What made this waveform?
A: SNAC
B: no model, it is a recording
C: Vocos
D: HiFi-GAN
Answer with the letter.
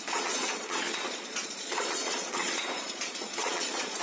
C